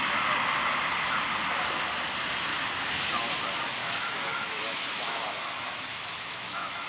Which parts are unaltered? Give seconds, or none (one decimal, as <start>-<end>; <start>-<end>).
0.0-2.5; 3.1-3.8